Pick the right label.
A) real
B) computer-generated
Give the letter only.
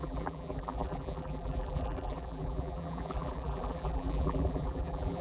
B